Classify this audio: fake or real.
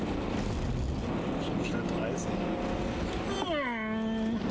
real